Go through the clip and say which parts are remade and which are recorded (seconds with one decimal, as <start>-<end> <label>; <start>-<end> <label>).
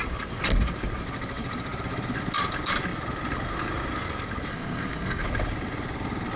0.0-4.5 recorded; 4.5-5.2 remade; 5.2-6.4 recorded